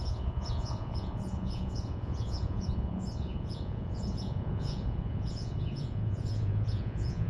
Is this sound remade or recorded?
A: remade